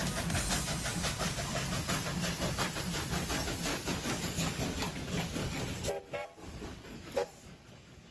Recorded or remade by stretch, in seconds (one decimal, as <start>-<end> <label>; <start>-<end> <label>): 0.0-0.9 recorded; 0.9-1.7 remade; 1.7-3.7 recorded; 3.7-5.6 remade; 5.6-6.7 recorded; 6.7-8.1 remade